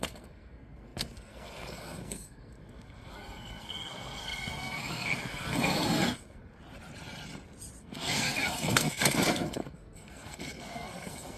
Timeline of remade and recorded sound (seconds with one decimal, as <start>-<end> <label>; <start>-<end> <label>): 0.0-6.4 remade; 6.4-7.8 recorded; 7.8-11.4 remade